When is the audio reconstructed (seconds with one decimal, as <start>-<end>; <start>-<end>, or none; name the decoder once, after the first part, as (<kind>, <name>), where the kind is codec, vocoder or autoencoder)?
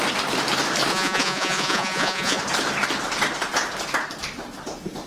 0.9-2.4 (vocoder, Vocos)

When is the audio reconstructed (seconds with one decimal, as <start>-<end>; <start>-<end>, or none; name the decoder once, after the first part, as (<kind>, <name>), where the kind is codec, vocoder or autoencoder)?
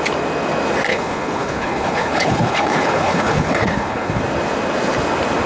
0.9-4.2 (codec, HILCodec)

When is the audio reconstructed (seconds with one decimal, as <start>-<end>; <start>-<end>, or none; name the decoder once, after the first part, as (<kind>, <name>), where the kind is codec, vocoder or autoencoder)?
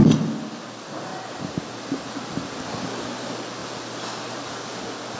none